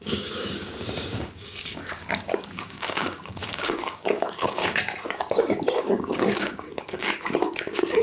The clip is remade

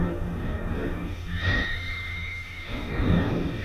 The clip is remade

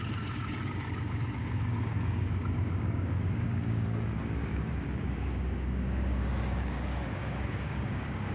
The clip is remade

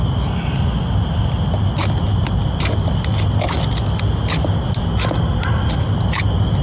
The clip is recorded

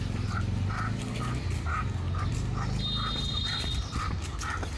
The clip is recorded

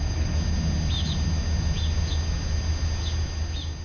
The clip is recorded